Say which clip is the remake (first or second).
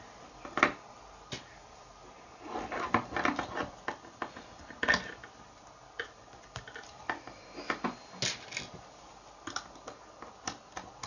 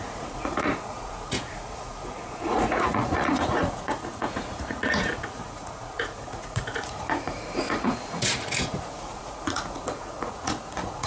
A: second